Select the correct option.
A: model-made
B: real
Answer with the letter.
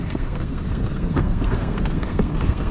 A